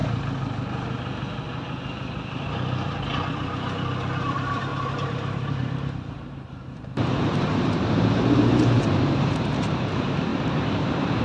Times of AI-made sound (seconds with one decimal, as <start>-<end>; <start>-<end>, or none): 4.2-11.2